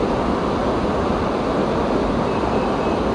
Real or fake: real